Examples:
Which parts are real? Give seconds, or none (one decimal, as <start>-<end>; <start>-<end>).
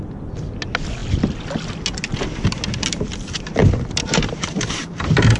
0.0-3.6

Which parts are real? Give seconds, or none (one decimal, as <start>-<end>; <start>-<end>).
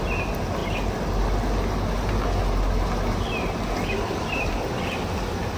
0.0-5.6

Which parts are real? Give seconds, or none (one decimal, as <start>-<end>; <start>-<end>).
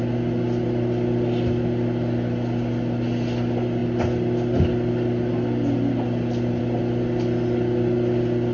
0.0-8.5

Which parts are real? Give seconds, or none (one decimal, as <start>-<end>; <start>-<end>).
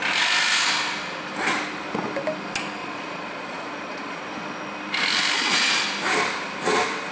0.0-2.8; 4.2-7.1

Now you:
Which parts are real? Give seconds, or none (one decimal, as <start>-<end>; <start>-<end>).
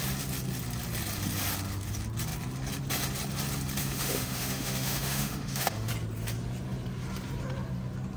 0.0-3.8; 5.9-8.2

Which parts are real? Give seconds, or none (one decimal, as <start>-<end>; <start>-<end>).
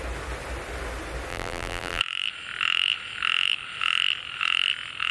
0.0-1.3; 2.0-5.1